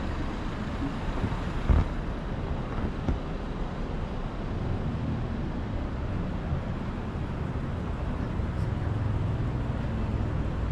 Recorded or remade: recorded